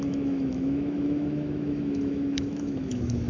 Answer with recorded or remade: remade